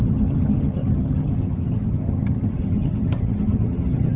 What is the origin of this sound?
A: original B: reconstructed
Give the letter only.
B